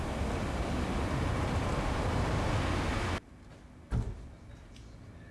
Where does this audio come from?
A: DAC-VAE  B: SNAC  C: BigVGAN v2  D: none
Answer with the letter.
D